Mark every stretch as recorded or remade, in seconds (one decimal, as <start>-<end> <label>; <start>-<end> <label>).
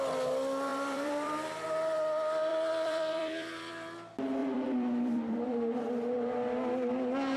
0.0-0.7 recorded; 0.7-1.3 remade; 1.3-2.5 recorded; 2.5-3.7 remade; 3.7-4.4 recorded; 4.4-5.9 remade; 5.9-7.4 recorded